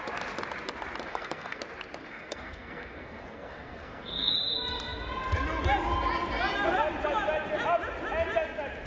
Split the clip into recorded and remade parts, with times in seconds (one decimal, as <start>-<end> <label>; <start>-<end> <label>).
0.0-1.1 recorded; 1.1-1.6 remade; 1.6-2.0 recorded; 2.0-4.3 remade; 4.3-8.9 recorded